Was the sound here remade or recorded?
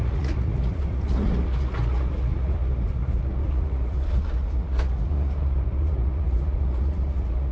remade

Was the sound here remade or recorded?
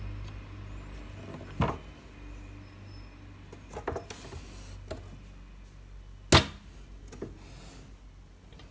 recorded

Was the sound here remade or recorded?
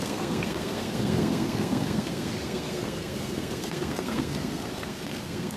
remade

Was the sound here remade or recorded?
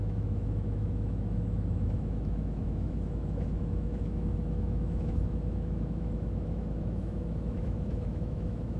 remade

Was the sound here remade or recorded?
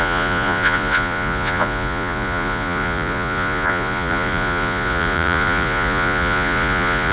remade